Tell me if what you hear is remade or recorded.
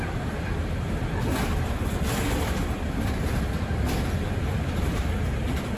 recorded